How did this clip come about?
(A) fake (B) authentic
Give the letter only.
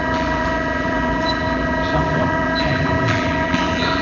A